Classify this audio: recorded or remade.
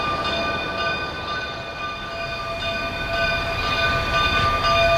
recorded